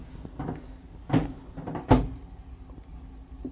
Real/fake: real